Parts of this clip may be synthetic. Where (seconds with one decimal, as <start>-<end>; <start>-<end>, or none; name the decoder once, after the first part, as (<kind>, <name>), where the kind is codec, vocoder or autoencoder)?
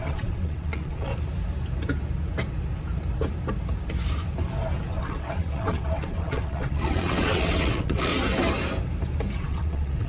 0.0-1.1 (vocoder, WaveNeXt); 4.9-8.1; 9.4-10.1